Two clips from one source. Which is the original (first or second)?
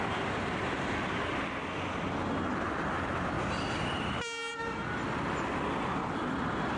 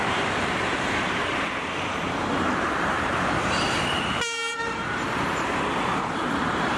first